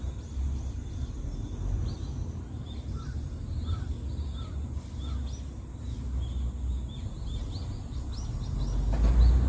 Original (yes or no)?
yes